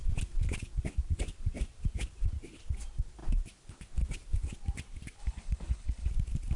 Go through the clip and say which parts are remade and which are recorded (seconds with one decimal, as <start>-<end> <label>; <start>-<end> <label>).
0.0-5.2 recorded; 5.2-6.1 remade; 6.1-6.6 recorded